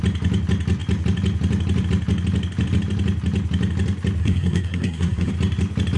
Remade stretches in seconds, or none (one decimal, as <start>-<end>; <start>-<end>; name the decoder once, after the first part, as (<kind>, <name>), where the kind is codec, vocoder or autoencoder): 4.2-5.3 (codec, SNAC)